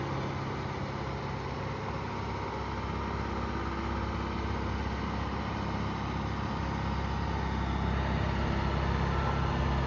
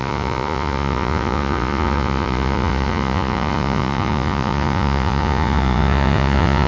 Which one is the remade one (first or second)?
second